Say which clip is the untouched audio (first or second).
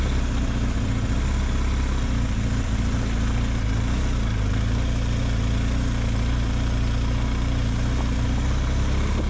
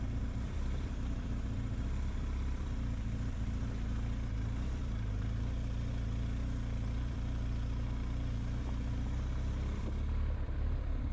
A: first